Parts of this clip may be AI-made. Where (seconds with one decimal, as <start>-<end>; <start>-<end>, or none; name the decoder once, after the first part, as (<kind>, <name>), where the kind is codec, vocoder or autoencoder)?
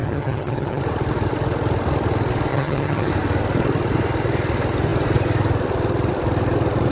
0.0-0.8 (vocoder, HiFi-GAN); 2.5-3.1